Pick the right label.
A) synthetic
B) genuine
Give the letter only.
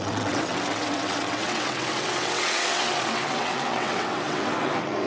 A